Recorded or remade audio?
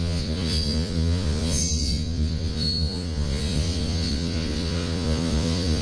remade